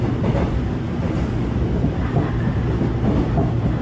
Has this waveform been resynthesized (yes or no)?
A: no